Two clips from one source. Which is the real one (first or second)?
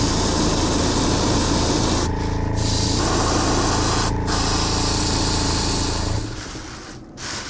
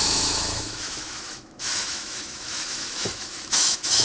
first